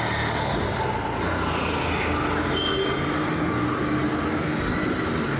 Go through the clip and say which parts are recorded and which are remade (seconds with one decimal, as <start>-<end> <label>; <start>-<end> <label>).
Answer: 0.0-5.4 recorded